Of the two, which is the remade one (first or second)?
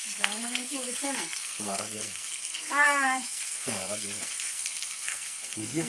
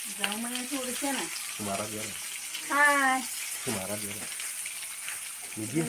first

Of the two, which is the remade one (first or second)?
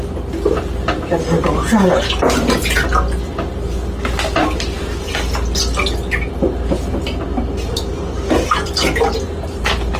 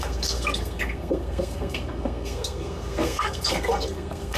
second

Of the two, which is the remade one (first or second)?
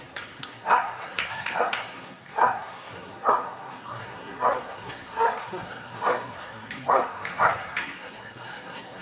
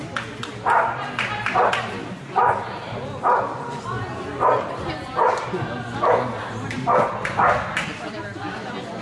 first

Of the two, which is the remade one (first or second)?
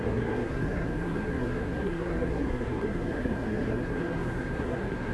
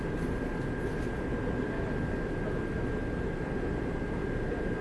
first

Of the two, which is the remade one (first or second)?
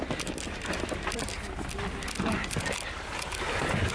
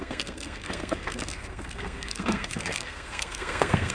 second